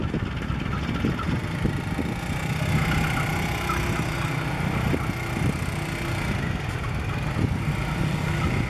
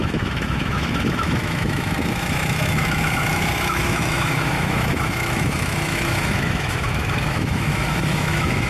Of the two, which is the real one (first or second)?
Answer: first